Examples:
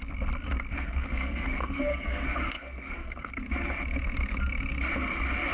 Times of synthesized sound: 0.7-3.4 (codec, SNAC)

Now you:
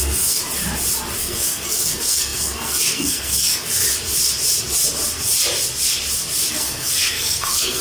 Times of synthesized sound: 0.0-0.4 (codec, SNAC); 1.2-3.8; 6.5-7.8

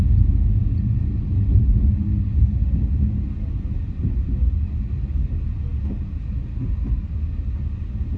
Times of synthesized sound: none

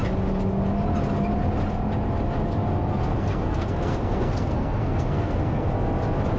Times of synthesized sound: 3.1-5.7 (codec, SNAC)